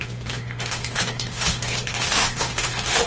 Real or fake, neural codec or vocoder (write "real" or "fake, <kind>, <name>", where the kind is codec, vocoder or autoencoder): fake, autoencoder, DAC-VAE